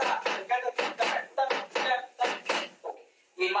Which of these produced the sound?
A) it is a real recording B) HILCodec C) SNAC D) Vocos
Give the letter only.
A